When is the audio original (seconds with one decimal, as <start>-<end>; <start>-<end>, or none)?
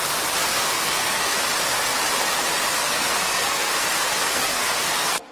0.0-0.4; 1.4-2.8